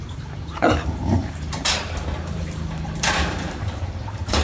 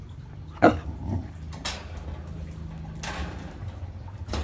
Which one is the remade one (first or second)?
first